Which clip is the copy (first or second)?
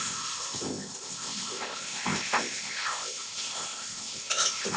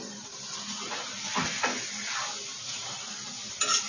first